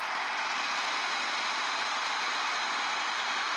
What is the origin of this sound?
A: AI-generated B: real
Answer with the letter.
A